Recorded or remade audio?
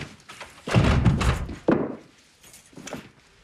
recorded